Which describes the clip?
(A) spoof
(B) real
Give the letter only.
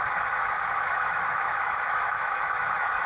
A